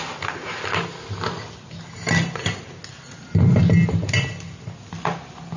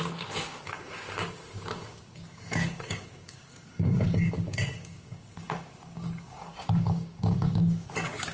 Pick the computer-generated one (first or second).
second